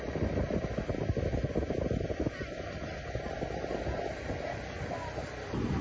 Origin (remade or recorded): recorded